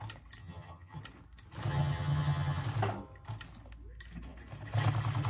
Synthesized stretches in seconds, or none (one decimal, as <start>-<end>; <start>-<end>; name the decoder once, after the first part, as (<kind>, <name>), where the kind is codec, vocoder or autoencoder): 0.4-1.0 (vocoder, HiFi-GAN); 1.7-2.6